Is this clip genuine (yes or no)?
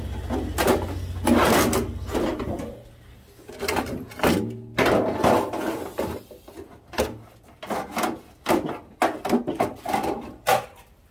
yes